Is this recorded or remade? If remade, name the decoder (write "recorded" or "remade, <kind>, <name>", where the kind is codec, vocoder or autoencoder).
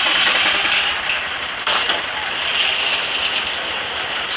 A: recorded